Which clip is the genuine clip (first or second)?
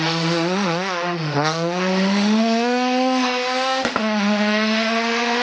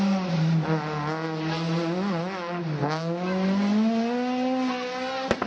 second